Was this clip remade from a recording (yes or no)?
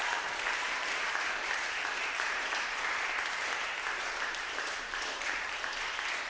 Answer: yes